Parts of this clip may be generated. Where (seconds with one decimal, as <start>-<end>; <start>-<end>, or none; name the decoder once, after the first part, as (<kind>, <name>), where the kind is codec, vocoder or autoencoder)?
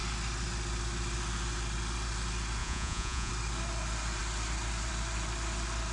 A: 2.6-3.3 (vocoder, Vocos)